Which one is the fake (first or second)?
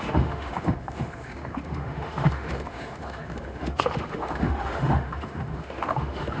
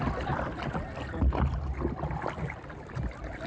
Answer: first